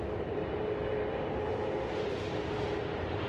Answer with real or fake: real